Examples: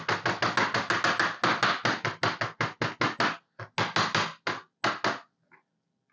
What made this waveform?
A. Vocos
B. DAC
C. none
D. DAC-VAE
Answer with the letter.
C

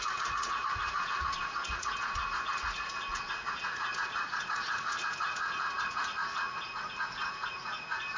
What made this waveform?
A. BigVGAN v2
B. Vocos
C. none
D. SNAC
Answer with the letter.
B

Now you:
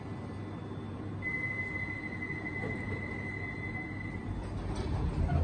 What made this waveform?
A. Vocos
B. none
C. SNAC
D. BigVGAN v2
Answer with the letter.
B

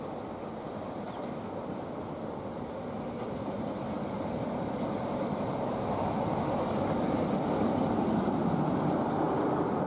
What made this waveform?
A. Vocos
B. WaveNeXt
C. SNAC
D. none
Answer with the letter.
D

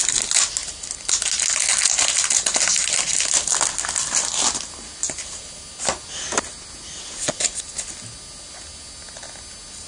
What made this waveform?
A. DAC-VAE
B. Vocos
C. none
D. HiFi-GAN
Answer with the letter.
C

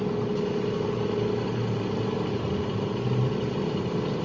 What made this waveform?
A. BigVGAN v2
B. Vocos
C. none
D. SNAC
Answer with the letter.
C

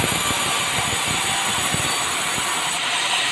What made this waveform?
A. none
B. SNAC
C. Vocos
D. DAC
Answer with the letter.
A